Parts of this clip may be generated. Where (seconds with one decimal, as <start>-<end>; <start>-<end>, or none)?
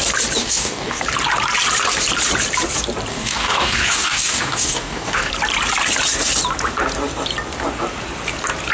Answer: 0.4-1.0; 3.1-5.3